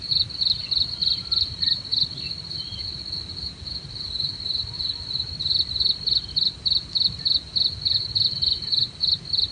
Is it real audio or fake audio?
real